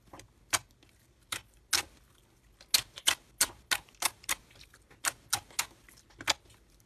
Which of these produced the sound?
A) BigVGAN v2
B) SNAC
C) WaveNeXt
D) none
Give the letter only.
D